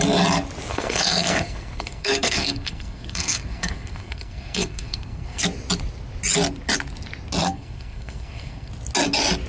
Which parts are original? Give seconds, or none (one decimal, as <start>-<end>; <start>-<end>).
0.0-0.7; 5.4-7.4; 8.7-9.5